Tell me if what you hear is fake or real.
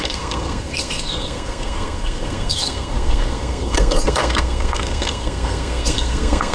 fake